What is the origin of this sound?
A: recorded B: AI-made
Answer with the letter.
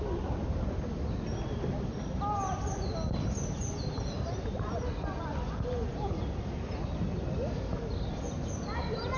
A